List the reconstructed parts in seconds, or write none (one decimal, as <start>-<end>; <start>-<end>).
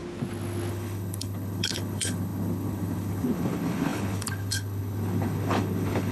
0.7-6.1